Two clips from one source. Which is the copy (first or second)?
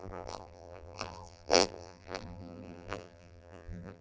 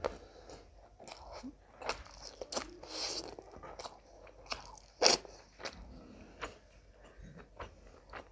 first